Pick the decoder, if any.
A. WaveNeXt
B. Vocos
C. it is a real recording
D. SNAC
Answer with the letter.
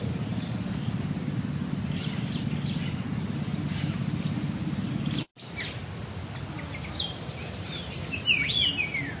C